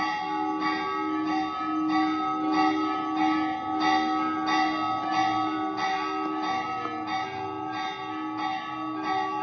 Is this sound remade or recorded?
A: recorded